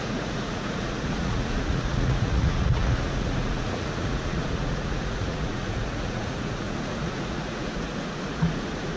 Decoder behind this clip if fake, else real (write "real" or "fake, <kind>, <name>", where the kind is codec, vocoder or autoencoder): fake, vocoder, Vocos